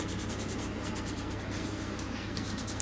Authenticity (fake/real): fake